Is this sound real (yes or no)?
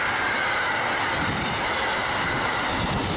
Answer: yes